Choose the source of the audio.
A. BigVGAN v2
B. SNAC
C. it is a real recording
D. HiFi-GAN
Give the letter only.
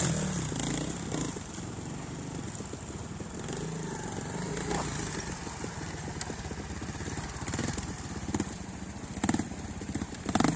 C